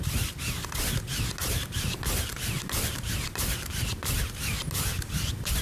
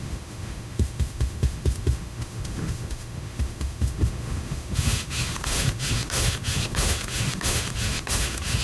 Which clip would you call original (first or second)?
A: first